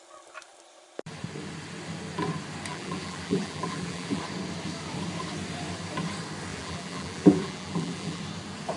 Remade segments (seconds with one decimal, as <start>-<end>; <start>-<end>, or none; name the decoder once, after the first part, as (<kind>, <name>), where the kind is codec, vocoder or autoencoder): 2.7-4.2 (vocoder, BigVGAN v2); 6.5-8.2